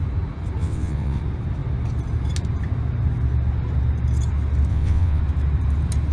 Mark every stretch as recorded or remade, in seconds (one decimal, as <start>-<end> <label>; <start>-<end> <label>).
0.0-0.6 recorded; 0.6-1.2 remade; 1.2-4.7 recorded; 4.7-5.2 remade; 5.2-6.1 recorded